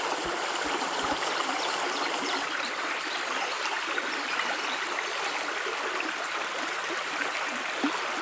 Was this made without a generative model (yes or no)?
yes